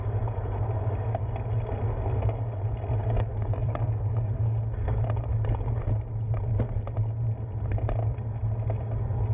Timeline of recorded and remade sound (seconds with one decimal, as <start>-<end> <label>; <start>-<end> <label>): 0.0-3.0 recorded; 3.0-4.6 remade; 4.6-9.3 recorded